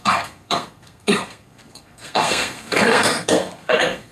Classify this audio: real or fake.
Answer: fake